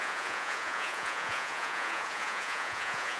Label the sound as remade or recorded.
remade